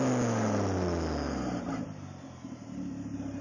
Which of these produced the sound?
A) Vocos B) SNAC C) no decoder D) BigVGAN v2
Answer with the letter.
C